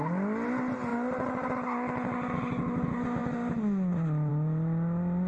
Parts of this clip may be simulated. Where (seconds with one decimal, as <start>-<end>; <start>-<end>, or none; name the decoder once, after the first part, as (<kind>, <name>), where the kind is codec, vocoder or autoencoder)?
none

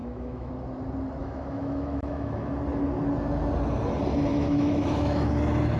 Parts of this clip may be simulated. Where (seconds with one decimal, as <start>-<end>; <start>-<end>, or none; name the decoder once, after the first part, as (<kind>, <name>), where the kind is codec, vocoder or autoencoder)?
0.0-0.5 (autoencoder, DAC-VAE); 1.2-2.5; 4.3-5.3